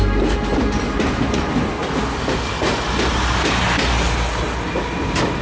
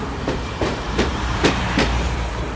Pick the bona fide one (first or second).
first